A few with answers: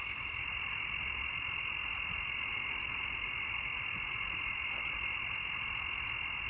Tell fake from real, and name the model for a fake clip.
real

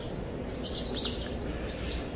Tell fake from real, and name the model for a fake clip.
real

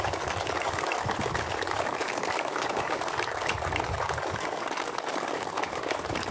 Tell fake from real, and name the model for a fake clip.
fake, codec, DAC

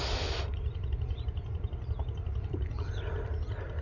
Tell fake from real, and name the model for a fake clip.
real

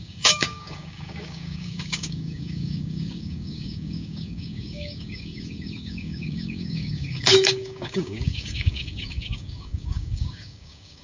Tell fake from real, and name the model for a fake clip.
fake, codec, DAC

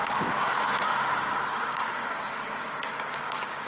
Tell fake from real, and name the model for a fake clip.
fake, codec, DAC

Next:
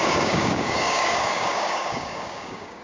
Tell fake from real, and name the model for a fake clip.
fake, codec, DAC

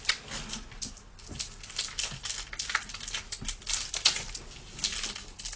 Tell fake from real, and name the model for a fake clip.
real